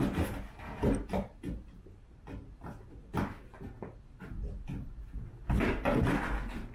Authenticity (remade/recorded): recorded